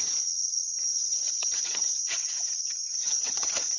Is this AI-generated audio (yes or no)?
yes